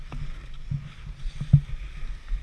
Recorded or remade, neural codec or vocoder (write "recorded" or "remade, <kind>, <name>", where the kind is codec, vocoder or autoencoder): recorded